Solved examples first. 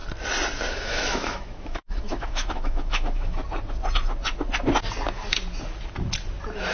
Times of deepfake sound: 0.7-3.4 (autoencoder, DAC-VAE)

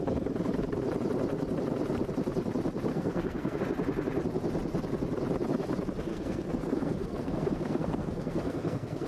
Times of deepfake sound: 2.9-3.6 (codec, SNAC); 6.1-9.1

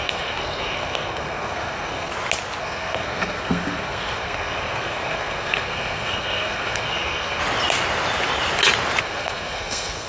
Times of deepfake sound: 0.0-2.1 (codec, SNAC); 2.6-7.4; 9.0-10.1

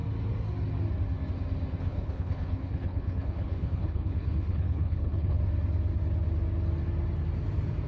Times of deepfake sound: 1.8-5.4 (codec, HILCodec)